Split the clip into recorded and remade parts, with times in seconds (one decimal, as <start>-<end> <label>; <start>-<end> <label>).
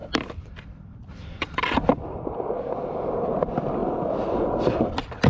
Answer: 0.0-3.2 remade; 3.2-3.8 recorded; 3.8-4.6 remade; 4.6-5.3 recorded